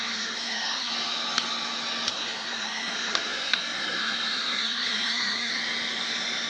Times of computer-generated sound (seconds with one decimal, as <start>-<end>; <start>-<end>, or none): 0.0-0.9; 2.1-5.5